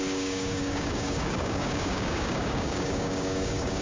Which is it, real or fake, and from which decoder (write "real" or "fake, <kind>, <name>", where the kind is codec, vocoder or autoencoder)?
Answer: fake, codec, DAC